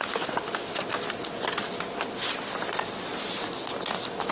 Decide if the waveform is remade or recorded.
recorded